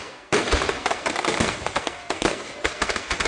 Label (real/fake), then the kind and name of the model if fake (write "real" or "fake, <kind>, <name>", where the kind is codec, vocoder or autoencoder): fake, codec, SNAC